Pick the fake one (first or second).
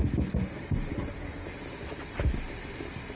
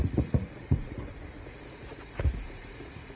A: second